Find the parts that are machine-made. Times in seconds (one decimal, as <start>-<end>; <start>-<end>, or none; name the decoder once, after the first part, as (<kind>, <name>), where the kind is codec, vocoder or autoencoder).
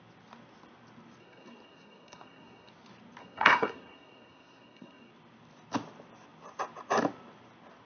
1.2-2.7 (codec, SNAC); 3.2-5.1